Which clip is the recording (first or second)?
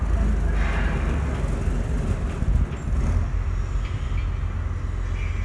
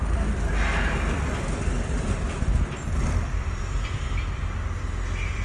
first